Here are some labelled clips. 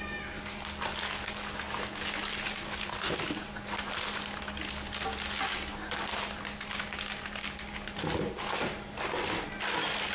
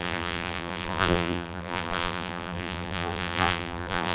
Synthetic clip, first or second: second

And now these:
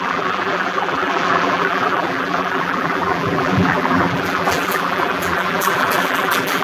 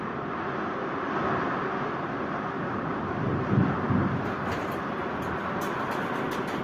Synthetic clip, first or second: first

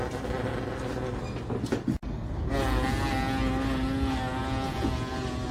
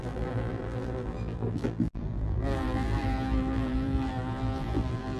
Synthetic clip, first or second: second